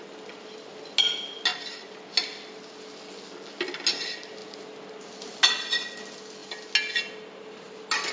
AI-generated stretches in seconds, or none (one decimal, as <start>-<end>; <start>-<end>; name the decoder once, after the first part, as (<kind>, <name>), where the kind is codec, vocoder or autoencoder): none